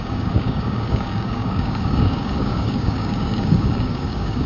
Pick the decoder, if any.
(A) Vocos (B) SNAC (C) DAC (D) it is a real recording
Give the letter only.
C